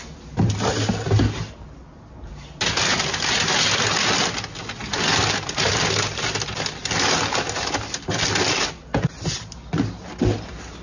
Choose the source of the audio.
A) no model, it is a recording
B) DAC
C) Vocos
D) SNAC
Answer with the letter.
A